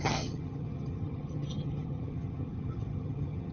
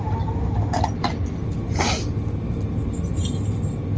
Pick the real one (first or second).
second